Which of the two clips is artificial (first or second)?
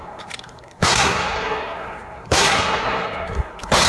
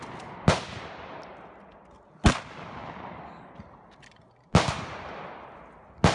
first